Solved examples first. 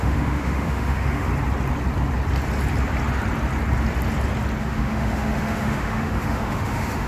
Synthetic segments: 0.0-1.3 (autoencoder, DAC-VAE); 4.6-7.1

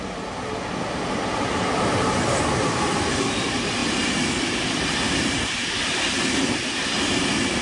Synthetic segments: none